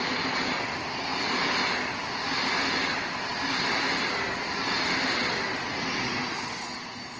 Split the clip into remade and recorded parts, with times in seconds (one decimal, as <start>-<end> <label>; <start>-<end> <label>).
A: 0.0-7.2 recorded